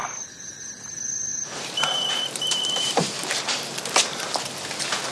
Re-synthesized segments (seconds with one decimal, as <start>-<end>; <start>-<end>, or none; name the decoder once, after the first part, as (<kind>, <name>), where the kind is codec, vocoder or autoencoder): 0.0-0.6 (vocoder, BigVGAN v2); 1.3-4.4